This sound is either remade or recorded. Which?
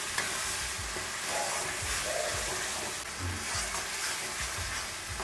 recorded